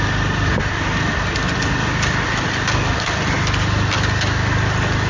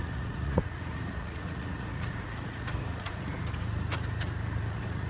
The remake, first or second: second